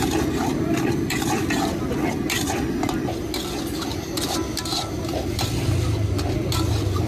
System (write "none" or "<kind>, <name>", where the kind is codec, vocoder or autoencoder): none